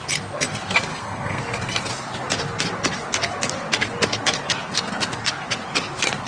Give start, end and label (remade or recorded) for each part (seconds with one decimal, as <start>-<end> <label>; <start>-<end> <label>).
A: 0.0-0.9 recorded; 0.9-1.4 remade; 1.4-6.3 recorded